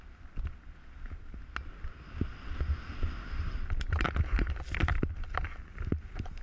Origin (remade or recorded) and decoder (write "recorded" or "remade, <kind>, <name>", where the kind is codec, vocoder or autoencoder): recorded